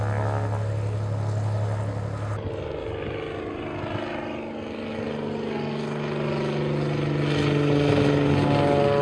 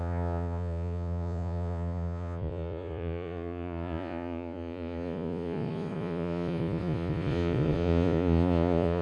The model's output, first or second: second